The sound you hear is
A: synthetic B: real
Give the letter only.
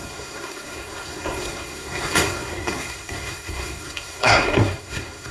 A